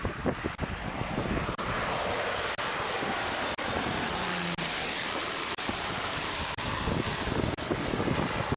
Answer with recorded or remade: recorded